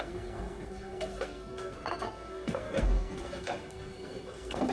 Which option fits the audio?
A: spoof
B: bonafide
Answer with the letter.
A